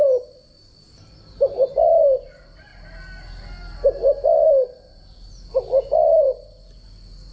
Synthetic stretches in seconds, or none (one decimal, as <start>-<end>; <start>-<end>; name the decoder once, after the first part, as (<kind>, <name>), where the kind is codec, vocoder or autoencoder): none